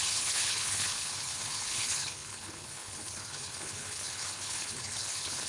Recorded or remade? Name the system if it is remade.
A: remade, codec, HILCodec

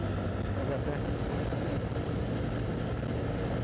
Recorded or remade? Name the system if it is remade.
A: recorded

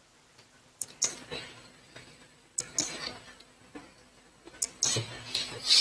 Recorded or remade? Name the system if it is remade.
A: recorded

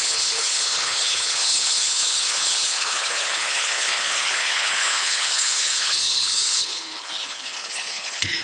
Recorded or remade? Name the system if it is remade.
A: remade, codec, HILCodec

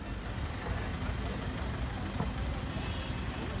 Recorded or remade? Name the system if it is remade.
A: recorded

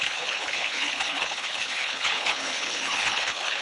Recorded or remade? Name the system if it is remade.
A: remade, codec, HILCodec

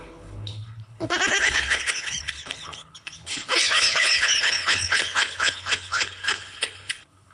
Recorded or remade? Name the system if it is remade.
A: remade, codec, HILCodec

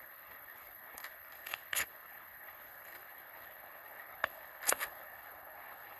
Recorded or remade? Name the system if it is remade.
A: remade, codec, HILCodec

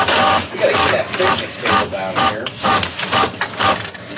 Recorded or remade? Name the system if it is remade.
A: recorded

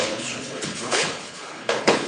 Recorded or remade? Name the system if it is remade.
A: remade, codec, HILCodec